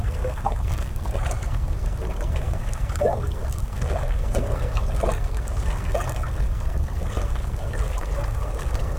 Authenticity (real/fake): fake